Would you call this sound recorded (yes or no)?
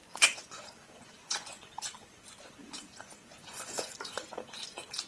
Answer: no